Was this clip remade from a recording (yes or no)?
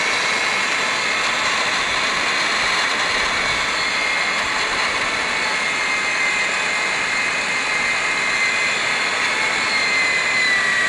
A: no